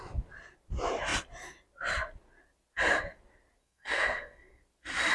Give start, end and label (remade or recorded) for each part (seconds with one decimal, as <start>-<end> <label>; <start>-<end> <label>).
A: 0.0-3.6 recorded; 3.6-4.6 remade; 4.6-5.1 recorded